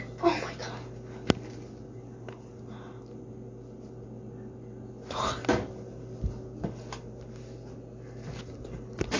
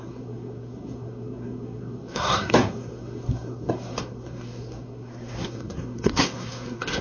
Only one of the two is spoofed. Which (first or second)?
second